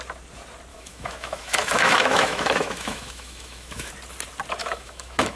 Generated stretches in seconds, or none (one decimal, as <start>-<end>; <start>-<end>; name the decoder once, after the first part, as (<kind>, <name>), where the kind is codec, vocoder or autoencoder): 0.7-3.9 (autoencoder, DAC-VAE); 4.6-5.4